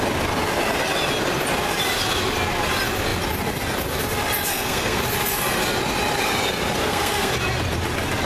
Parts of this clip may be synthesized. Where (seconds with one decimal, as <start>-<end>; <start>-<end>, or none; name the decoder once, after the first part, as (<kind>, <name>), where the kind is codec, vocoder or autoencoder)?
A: 4.5-5.0 (codec, SNAC); 6.8-7.3